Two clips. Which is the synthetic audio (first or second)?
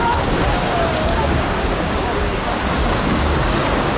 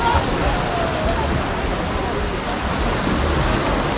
first